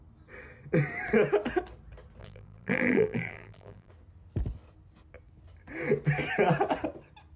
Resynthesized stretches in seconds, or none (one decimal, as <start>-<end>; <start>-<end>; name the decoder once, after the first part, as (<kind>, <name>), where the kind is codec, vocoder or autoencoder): 2.2-3.9 (vocoder, BigVGAN v2)